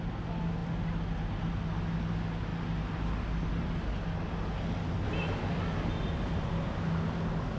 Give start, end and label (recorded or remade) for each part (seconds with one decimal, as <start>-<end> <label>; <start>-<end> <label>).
0.0-7.6 recorded